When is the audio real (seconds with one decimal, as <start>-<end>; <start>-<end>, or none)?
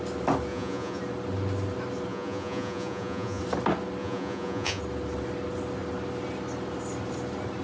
0.0-0.5; 1.0-2.1; 3.4-4.0; 4.8-7.6